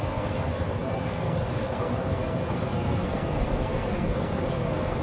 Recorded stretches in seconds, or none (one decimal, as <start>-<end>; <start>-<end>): none